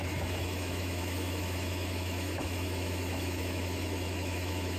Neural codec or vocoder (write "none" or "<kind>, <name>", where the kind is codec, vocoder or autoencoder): autoencoder, DAC-VAE